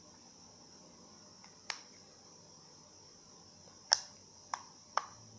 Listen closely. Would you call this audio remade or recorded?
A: recorded